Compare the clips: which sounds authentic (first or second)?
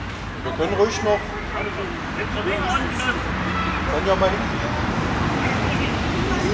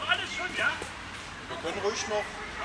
first